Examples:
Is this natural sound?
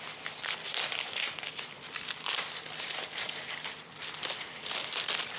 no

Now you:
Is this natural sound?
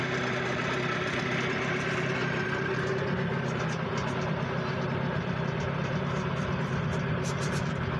yes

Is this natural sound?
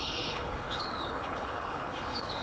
no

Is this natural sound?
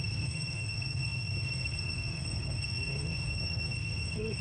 no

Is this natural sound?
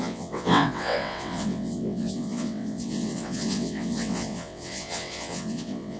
no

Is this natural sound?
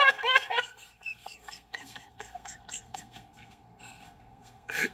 no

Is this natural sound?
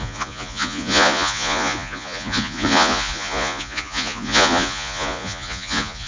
no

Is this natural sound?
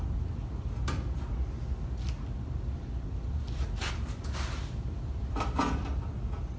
yes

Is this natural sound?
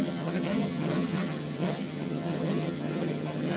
no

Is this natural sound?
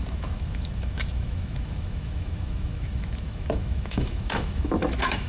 no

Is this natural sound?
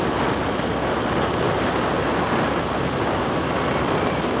yes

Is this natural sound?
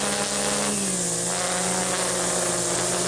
yes